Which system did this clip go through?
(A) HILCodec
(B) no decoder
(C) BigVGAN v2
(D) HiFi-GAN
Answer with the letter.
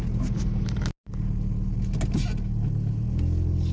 B